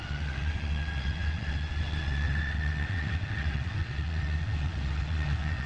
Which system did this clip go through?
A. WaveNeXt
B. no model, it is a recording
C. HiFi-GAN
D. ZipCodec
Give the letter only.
A